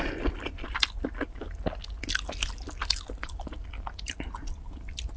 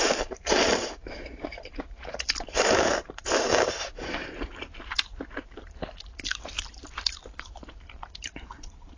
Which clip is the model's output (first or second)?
second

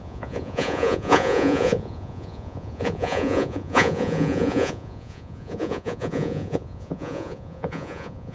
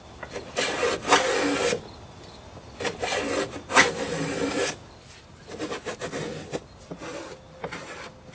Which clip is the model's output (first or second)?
first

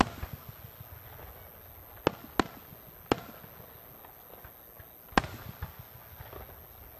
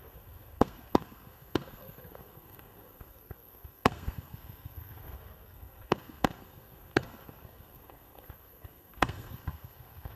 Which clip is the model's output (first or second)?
second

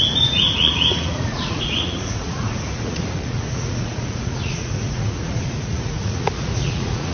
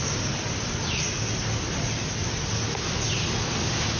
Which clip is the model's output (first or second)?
first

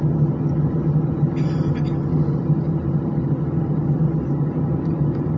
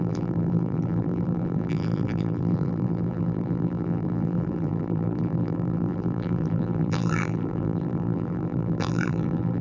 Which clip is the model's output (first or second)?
second